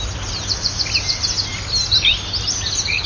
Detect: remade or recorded recorded